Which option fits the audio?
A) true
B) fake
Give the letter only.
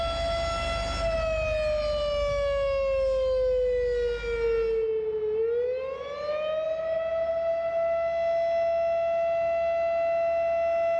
A